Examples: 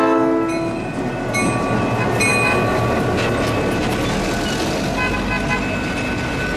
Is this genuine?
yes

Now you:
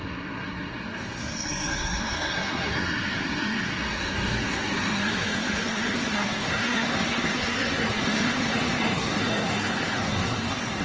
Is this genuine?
no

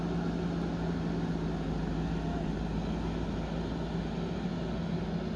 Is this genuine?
yes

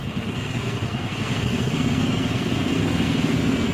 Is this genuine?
no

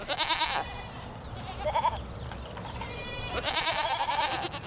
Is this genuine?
yes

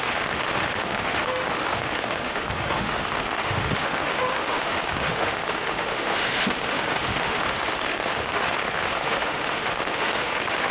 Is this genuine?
no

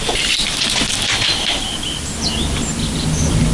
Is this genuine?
yes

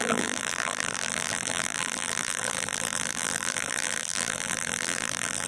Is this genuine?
no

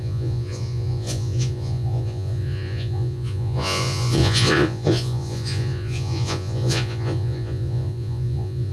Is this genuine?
no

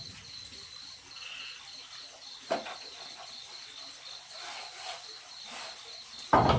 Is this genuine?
yes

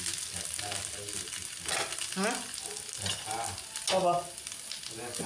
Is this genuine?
yes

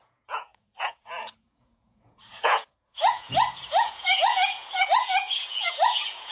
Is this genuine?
no